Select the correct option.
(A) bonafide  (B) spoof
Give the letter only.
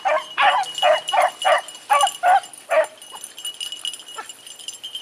A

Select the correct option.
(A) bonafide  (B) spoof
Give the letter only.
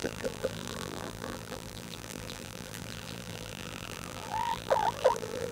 B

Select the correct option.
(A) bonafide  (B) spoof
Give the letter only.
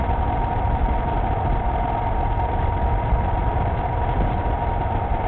A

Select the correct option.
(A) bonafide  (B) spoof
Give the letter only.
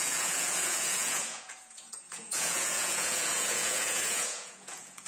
B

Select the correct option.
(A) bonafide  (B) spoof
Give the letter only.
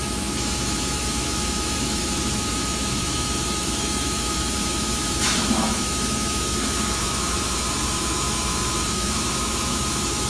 B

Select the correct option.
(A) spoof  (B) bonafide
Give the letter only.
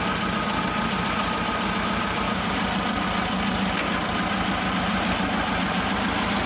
B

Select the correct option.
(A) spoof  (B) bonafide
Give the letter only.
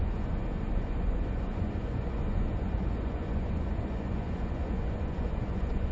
A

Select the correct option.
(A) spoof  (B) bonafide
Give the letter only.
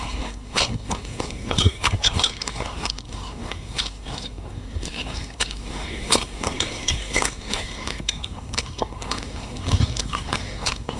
A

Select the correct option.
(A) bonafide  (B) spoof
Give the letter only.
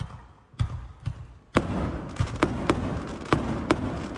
A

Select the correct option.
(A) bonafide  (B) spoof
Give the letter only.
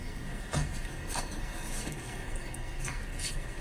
B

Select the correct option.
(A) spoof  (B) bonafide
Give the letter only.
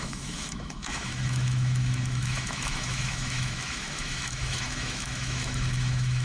A